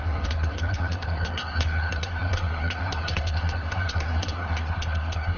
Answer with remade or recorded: remade